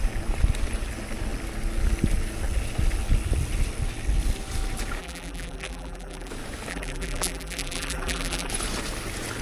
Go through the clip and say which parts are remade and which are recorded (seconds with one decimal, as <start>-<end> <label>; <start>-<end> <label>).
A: 0.0-5.0 recorded; 5.0-6.3 remade; 6.3-6.7 recorded; 6.7-8.5 remade; 8.5-9.4 recorded